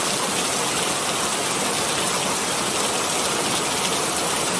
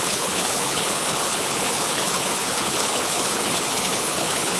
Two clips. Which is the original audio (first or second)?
first